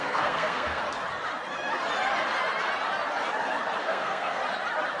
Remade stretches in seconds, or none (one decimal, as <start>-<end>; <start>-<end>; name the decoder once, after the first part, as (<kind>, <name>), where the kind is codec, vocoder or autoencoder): 0.0-0.8 (codec, SNAC); 3.8-4.4